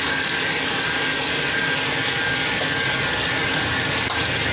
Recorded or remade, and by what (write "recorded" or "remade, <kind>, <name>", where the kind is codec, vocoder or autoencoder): recorded